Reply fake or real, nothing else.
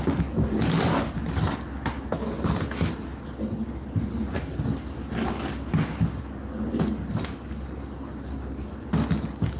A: real